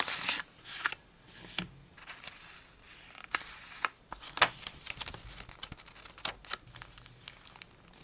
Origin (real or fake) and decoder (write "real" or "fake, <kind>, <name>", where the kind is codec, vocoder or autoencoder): real